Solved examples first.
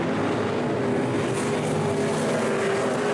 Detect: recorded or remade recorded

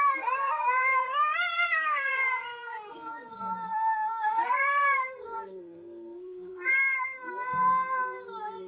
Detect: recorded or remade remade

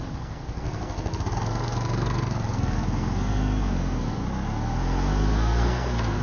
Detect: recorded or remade remade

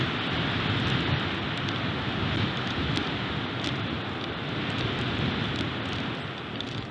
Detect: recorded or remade recorded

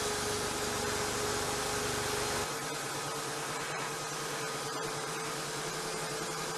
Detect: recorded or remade recorded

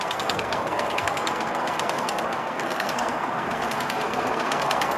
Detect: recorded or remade remade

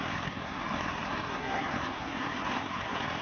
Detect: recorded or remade remade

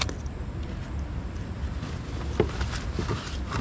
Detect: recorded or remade recorded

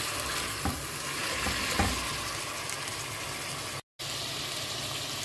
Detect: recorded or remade recorded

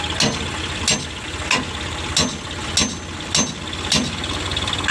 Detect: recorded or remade recorded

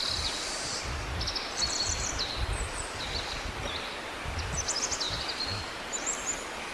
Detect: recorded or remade recorded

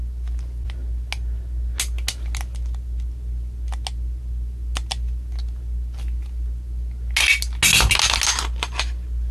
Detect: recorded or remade recorded